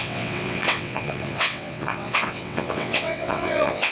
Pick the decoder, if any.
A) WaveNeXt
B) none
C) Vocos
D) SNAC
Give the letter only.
A